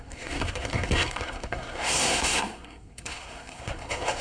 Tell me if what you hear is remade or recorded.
remade